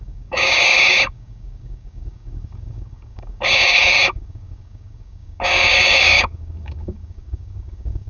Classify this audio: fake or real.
fake